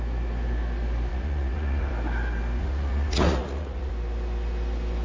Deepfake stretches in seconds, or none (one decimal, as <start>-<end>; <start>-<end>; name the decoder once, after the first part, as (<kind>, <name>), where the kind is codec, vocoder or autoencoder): 1.1-1.9 (vocoder, Vocos); 2.6-3.9